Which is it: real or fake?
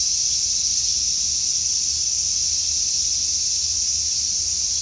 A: real